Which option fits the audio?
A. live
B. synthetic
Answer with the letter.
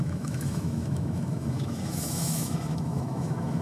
B